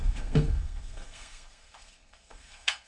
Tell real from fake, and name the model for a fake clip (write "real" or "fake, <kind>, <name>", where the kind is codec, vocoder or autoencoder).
fake, codec, SNAC